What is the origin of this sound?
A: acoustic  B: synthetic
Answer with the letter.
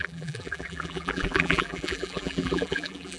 B